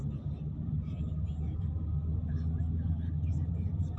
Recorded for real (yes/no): yes